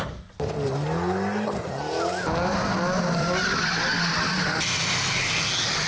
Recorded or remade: recorded